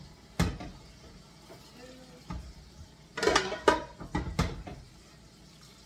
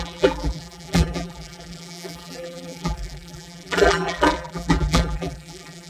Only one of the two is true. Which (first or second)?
first